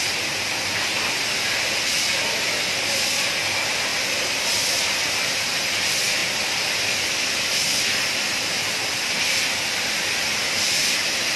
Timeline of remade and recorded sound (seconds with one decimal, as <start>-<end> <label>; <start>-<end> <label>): 0.0-11.4 recorded